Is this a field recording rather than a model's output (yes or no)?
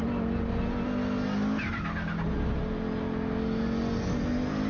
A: yes